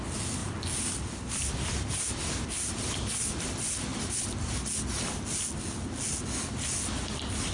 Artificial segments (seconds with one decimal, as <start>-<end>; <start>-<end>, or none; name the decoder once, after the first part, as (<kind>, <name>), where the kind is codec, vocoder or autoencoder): none